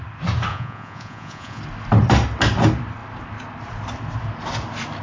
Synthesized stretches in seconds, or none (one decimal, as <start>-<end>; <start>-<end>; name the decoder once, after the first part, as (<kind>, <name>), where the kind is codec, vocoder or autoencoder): 0.5-1.6 (vocoder, Vocos)